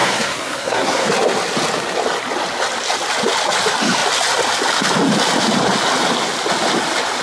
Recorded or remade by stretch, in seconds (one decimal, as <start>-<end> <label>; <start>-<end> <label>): 0.0-1.1 remade; 1.1-7.2 recorded